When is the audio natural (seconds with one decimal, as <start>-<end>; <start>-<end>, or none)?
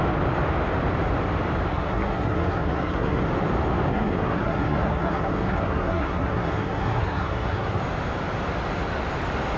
0.0-1.7; 3.2-3.9; 7.8-9.6